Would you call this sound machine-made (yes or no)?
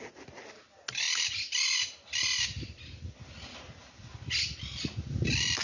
no